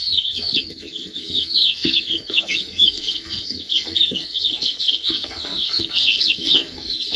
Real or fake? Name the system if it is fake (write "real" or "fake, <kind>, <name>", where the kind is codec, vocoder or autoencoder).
fake, codec, SNAC